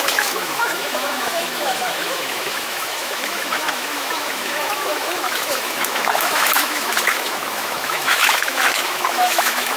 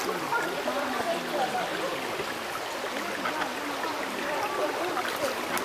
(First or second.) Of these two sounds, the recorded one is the second